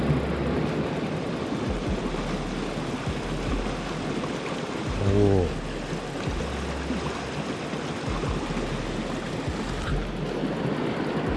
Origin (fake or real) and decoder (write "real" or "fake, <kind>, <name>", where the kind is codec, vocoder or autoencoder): real